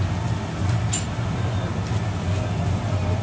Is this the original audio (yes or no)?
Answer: yes